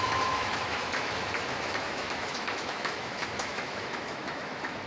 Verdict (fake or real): fake